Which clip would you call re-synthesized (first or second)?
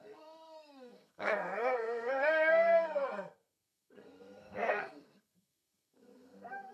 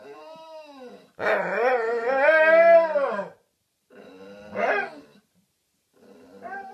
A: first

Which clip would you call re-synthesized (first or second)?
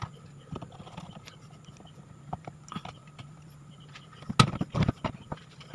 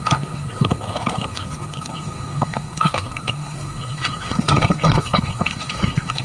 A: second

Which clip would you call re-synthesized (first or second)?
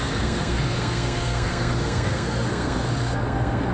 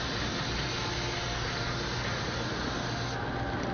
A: first